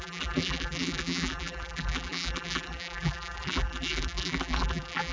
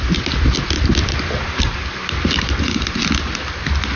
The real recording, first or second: second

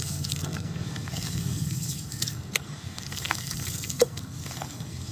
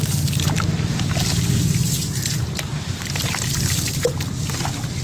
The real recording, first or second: second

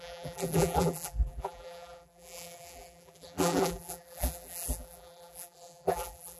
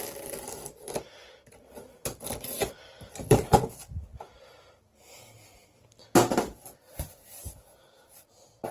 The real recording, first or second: second